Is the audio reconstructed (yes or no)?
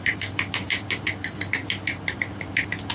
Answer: no